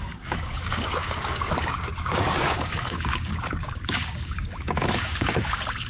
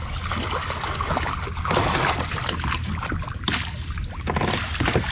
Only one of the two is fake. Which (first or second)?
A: first